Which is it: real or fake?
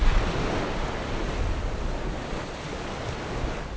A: real